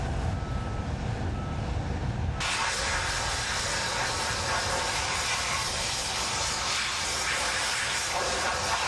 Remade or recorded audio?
recorded